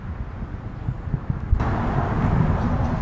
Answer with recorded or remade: recorded